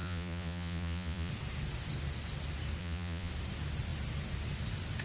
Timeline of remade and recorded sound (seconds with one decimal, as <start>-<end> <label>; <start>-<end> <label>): 0.0-1.3 remade; 1.3-2.8 recorded; 2.8-3.3 remade; 3.3-5.0 recorded